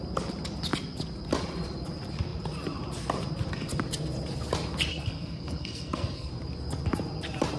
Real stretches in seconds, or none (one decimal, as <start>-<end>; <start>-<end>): 0.0-4.9; 6.3-7.6